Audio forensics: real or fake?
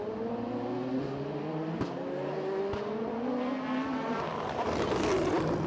real